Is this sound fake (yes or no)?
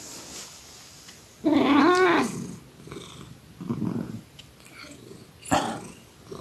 no